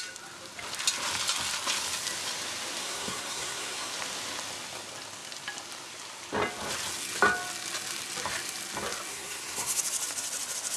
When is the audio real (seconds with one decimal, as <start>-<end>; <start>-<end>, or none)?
0.0-2.8; 3.9-9.1; 9.8-10.8